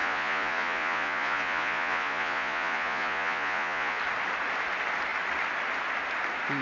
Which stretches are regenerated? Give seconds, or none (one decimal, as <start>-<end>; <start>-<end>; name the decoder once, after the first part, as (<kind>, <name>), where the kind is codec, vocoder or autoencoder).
0.0-4.0 (vocoder, Vocos)